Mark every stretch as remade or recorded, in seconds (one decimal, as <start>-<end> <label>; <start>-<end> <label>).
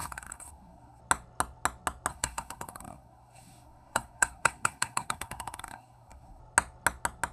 0.0-1.0 remade; 1.0-2.1 recorded; 2.1-6.4 remade; 6.4-7.3 recorded